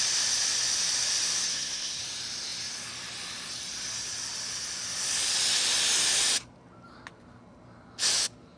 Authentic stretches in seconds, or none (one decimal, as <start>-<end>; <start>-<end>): 0.0-1.5; 2.0-8.6

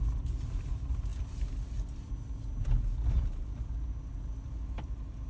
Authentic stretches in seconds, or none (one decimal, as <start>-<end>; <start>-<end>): 0.0-5.3

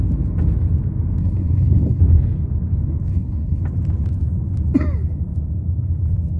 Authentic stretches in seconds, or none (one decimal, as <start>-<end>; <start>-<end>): 0.0-1.2; 2.0-3.1; 3.6-6.4

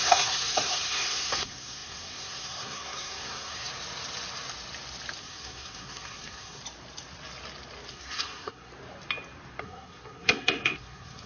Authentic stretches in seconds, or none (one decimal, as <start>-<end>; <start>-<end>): 3.7-5.2; 6.6-7.9; 8.7-9.6

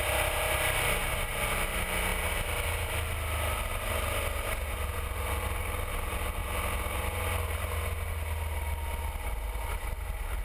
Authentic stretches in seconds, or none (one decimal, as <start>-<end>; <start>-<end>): 0.0-10.4

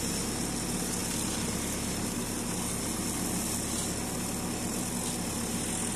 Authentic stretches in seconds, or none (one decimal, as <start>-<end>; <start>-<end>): 0.0-6.0

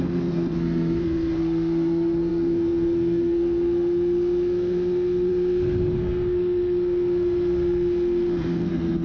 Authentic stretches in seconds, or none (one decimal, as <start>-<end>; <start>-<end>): none